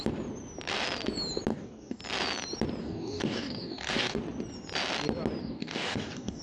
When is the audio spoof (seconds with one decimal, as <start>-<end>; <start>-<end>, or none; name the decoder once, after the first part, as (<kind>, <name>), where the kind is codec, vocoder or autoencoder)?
1.5-2.0 (codec, DAC); 2.8-4.2; 5.4-6.4